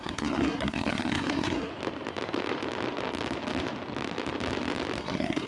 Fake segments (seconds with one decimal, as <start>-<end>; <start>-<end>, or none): 0.0-1.7; 5.0-5.5